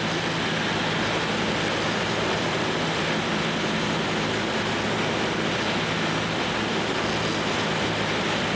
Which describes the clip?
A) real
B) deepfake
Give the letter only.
A